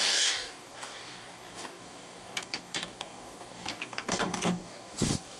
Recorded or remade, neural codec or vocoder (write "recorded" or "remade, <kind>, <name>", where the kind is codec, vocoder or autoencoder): remade, codec, DAC